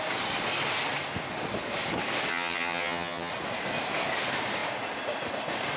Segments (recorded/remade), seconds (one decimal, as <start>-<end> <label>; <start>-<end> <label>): 0.0-2.3 recorded; 2.3-3.3 remade; 3.3-5.8 recorded